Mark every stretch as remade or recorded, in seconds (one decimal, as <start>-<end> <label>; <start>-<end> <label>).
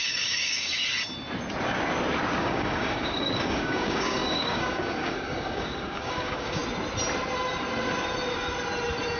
0.0-0.8 remade; 0.8-2.4 recorded; 2.4-6.6 remade; 6.6-9.2 recorded